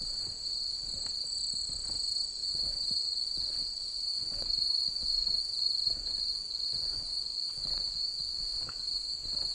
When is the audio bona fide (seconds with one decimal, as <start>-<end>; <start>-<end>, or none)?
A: 0.0-2.4; 3.6-4.1; 8.0-9.5